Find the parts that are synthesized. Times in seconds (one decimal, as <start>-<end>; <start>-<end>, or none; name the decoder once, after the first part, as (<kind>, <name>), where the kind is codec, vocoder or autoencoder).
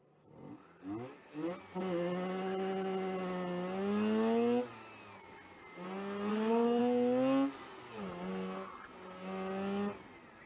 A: 6.3-6.8 (codec, SNAC)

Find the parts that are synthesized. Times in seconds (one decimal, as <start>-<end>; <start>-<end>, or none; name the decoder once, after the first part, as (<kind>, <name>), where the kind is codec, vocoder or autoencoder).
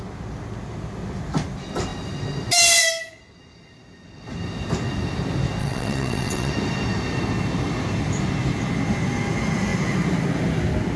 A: 5.6-6.5 (vocoder, WaveNeXt)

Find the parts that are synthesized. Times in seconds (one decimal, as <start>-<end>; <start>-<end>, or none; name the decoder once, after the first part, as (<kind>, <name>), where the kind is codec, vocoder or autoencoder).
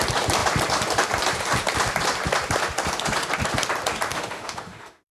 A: 4.1-5.1 (autoencoder, DAC-VAE)